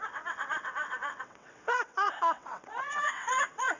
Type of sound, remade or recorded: remade